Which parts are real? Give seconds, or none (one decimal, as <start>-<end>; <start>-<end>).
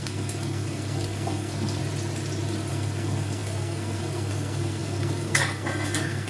1.8-2.7